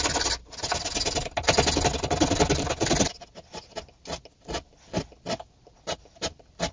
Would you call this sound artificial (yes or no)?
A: no